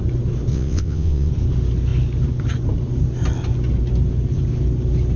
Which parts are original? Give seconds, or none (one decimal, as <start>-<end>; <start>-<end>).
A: 0.0-0.5; 1.3-5.2